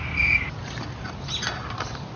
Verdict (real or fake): real